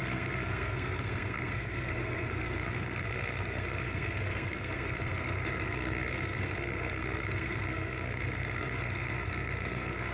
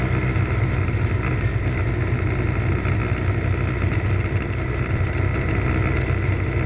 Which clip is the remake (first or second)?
first